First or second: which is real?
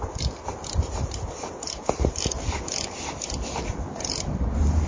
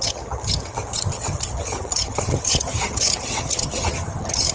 first